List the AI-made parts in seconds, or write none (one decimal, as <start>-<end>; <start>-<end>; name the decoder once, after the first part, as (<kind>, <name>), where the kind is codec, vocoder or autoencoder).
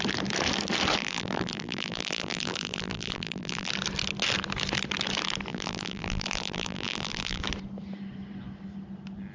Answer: 1.0-3.7 (vocoder, BigVGAN v2); 5.5-7.4